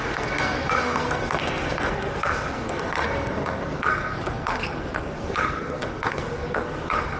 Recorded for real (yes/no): no